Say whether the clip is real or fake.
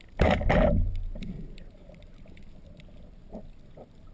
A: fake